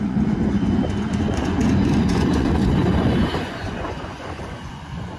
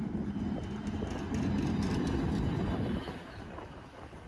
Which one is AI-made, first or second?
first